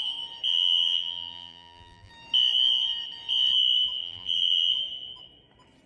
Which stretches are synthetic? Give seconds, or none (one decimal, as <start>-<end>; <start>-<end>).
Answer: 0.5-2.1; 4.0-4.7